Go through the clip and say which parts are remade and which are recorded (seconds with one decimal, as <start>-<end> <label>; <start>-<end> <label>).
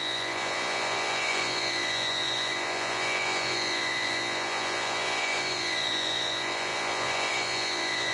0.0-8.1 remade